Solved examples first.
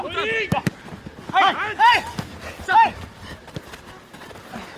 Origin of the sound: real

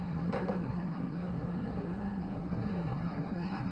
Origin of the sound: fake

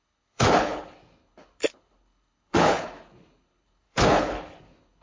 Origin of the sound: fake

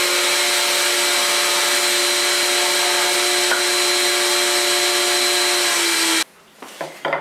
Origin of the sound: real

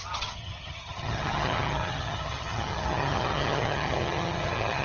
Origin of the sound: fake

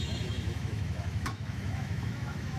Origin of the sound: fake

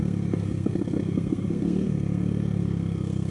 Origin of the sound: fake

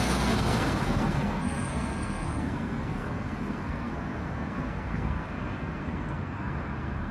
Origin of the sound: fake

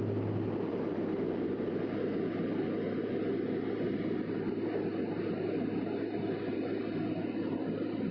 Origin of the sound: real